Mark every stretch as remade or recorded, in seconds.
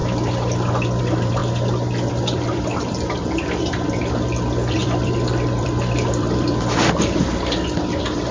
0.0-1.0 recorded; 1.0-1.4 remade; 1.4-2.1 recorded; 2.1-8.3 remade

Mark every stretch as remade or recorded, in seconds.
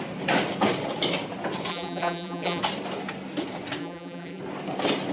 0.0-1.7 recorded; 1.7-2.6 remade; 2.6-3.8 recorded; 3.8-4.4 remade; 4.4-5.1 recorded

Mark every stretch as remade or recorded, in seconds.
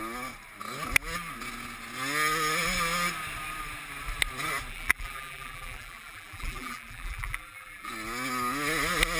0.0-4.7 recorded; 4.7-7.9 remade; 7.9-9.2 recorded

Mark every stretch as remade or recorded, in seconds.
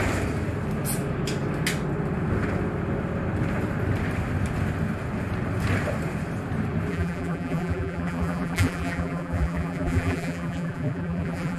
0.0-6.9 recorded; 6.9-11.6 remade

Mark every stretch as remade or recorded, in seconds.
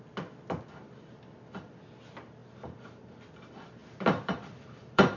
0.0-2.4 recorded; 2.4-3.3 remade; 3.3-3.8 recorded; 3.8-5.2 remade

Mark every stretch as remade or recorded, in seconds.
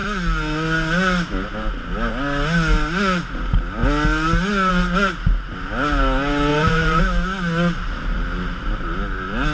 0.0-6.5 recorded; 6.5-7.0 remade; 7.0-9.5 recorded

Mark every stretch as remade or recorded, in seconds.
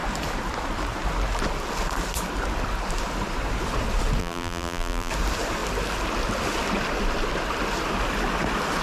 0.0-4.2 recorded; 4.2-5.1 remade; 5.1-8.8 recorded